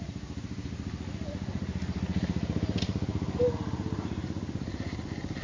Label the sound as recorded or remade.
recorded